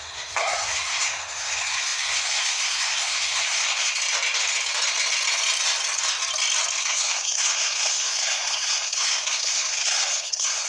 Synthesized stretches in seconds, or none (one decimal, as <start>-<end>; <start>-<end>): 0.0-4.0; 6.8-10.7